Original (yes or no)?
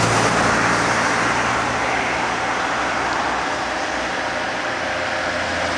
yes